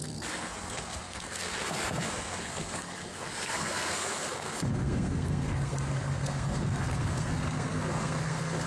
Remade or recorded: remade